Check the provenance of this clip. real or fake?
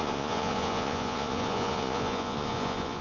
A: fake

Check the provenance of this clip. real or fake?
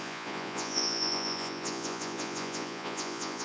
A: fake